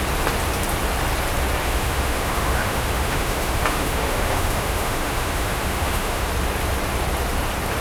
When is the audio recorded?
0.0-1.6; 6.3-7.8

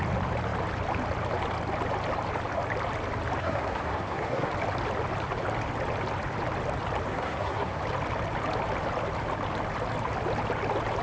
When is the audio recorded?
0.0-3.4; 4.5-7.1; 7.8-11.0

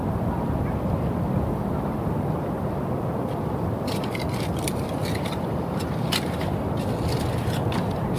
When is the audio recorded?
0.0-5.0; 5.8-8.2

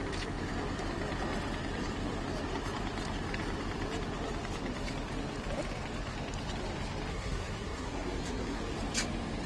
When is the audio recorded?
0.0-7.1; 8.6-9.5

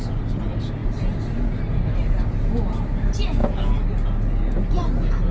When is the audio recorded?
0.0-5.3

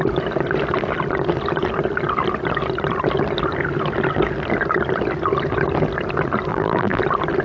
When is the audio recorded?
0.0-6.5; 7.0-7.4

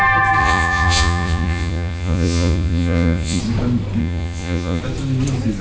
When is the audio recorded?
0.0-0.4; 3.4-4.0; 4.8-5.6

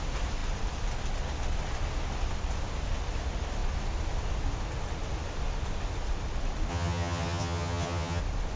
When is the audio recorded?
0.0-6.7; 8.2-8.6